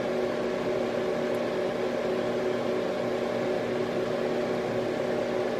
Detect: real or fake real